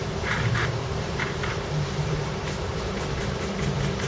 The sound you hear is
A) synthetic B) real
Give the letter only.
A